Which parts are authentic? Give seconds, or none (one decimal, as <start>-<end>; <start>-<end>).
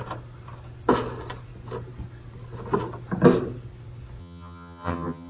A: 0.0-4.2